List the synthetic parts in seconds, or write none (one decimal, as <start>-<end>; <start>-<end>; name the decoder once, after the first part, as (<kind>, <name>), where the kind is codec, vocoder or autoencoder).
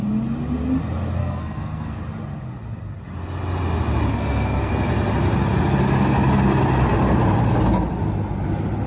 1.2-2.0 (codec, SNAC); 4.1-4.7